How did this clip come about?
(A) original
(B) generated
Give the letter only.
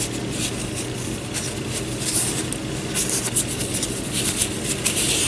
A